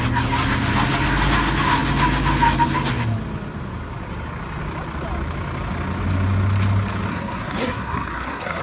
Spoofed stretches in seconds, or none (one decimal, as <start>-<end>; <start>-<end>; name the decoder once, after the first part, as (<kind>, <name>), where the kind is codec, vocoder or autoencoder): 7.1-8.6 (codec, SNAC)

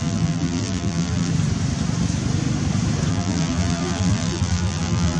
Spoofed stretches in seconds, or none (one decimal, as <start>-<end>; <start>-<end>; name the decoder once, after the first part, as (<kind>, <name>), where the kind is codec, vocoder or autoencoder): 0.0-1.3 (vocoder, BigVGAN v2); 3.1-5.2

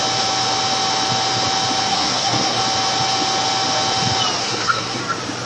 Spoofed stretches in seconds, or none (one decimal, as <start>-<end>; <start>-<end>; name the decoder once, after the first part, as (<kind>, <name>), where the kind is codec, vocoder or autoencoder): 1.9-2.6 (codec, SNAC); 4.4-5.0

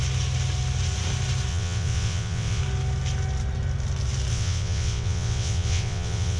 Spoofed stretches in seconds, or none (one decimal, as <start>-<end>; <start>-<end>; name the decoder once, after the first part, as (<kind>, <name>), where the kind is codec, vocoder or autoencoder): 1.5-2.6 (vocoder, WaveNeXt); 4.3-6.4

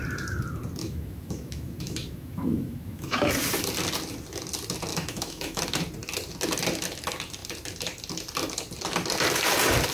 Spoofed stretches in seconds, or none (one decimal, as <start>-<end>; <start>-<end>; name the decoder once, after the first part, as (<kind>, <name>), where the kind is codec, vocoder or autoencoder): 0.8-3.3 (autoencoder, DAC-VAE); 4.9-5.6

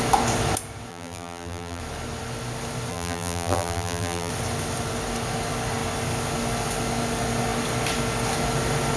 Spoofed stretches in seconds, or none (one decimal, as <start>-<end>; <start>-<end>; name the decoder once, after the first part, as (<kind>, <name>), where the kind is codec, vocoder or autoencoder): 0.9-1.8 (vocoder, BigVGAN v2); 2.9-4.3